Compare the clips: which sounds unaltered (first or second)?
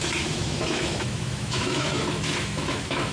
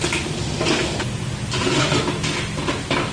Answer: second